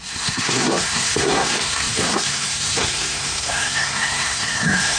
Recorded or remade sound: remade